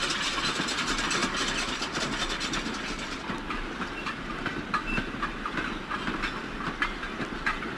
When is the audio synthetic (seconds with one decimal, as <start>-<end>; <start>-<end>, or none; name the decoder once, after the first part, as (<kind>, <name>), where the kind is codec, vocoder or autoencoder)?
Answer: none